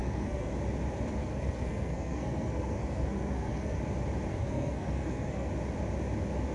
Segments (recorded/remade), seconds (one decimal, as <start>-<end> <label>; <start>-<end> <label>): 0.0-0.5 remade; 0.5-1.2 recorded; 1.2-3.8 remade; 3.8-4.3 recorded; 4.3-5.5 remade; 5.5-6.5 recorded